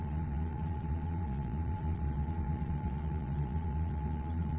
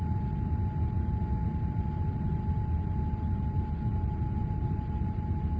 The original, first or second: second